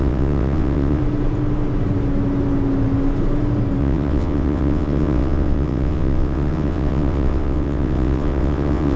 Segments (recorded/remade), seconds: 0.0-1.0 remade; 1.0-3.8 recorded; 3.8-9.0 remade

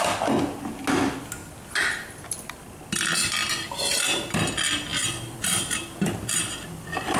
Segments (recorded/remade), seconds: 0.0-3.4 recorded; 3.4-4.2 remade; 4.2-4.9 recorded; 4.9-7.2 remade

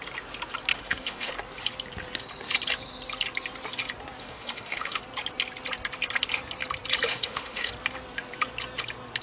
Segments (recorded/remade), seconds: 0.0-0.7 recorded; 0.7-1.3 remade; 1.3-4.2 recorded; 4.2-5.0 remade; 5.0-7.1 recorded; 7.1-7.7 remade; 7.7-9.2 recorded

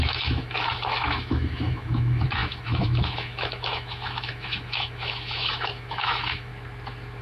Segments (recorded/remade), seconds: 0.0-6.5 remade; 6.5-7.2 recorded

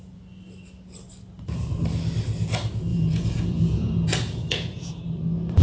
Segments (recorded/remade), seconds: 0.0-2.9 recorded; 2.9-5.0 remade; 5.0-5.6 recorded

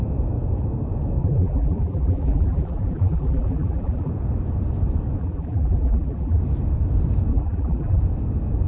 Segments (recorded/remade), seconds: 0.0-1.2 recorded; 1.2-4.1 remade; 4.1-5.2 recorded; 5.2-6.4 remade; 6.4-7.3 recorded; 7.3-8.0 remade; 8.0-8.7 recorded

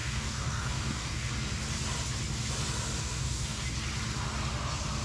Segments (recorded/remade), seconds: 0.0-1.3 remade; 1.3-3.0 recorded; 3.0-3.6 remade; 3.6-5.0 recorded

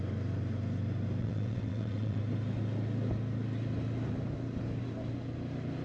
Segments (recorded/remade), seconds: 0.0-1.2 recorded; 1.2-2.2 remade; 2.2-5.8 recorded